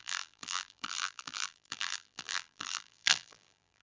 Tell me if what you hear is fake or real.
fake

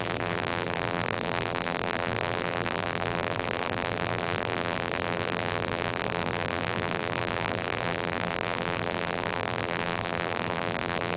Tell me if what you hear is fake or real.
fake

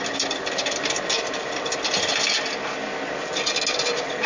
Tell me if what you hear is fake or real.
real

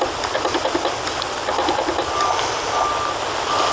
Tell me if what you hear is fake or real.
real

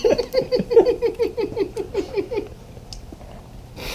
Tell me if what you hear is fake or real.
real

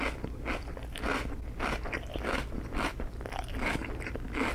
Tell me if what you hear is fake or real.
real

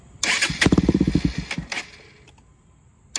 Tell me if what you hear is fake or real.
real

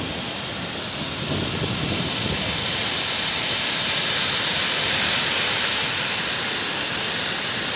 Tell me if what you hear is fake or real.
real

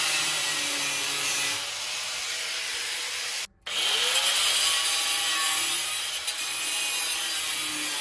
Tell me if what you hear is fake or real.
real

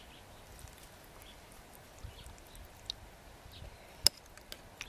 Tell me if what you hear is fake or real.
real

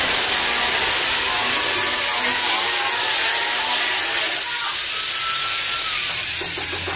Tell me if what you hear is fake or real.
real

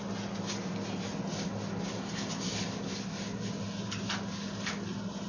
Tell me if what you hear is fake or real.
real